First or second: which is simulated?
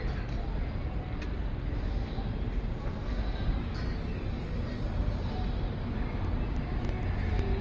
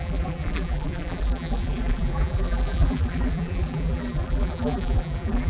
second